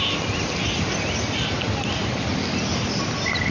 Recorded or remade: recorded